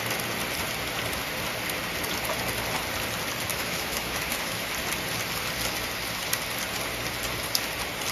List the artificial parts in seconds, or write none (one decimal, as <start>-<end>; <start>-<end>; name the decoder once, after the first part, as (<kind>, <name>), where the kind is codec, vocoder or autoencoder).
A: 3.5-4.7 (autoencoder, DAC-VAE)